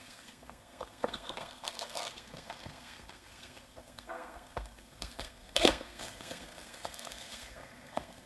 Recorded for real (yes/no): no